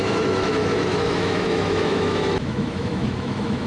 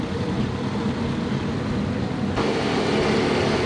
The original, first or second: second